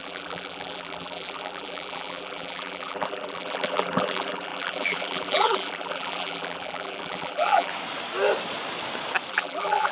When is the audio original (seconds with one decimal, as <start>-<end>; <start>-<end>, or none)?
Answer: 7.7-9.3